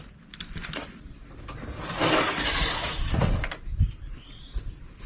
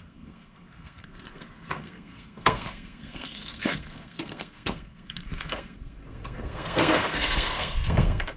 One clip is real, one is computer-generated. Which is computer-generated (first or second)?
second